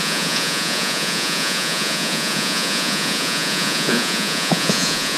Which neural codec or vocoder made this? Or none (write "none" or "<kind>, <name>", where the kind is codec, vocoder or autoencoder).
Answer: vocoder, Vocos